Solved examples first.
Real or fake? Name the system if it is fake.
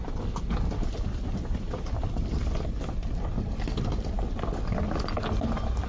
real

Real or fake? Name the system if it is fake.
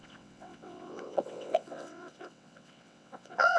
fake, vocoder, WaveNeXt